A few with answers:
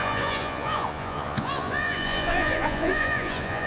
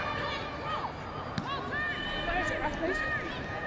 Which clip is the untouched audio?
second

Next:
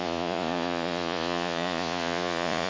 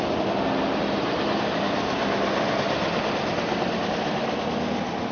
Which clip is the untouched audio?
second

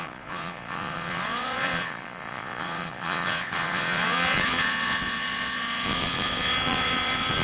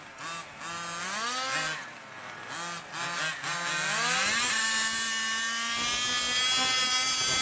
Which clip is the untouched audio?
second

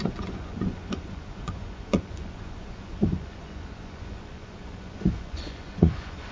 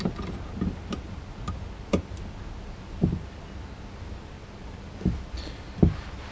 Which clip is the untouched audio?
second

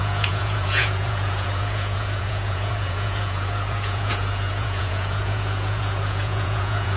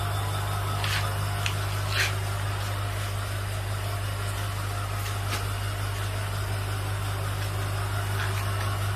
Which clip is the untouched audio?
second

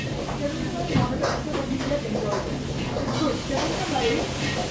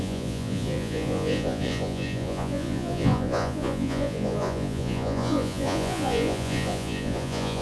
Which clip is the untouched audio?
first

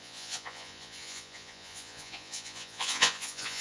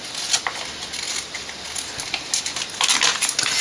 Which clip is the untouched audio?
second